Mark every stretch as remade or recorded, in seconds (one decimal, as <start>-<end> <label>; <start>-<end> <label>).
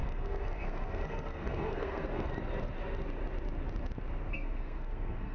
0.0-2.3 remade; 2.3-4.3 recorded; 4.3-5.3 remade